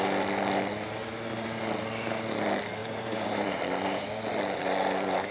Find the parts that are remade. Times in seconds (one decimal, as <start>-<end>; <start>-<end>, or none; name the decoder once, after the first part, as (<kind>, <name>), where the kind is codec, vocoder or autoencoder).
1.0-1.6 (vocoder, BigVGAN v2); 2.8-3.6